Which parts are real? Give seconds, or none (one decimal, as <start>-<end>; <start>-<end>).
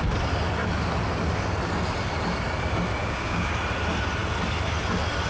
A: 0.0-3.0; 3.5-5.3